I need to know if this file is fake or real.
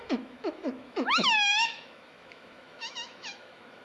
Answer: fake